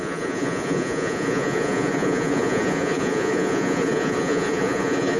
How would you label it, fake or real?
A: fake